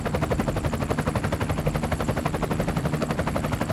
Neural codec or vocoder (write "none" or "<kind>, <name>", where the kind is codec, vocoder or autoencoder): none